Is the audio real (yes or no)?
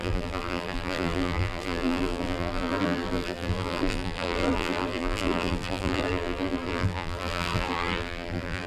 no